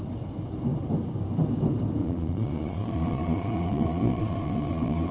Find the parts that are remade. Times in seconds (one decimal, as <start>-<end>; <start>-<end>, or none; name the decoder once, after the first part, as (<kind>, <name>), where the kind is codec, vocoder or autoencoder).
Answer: 2.0-5.1 (vocoder, Vocos)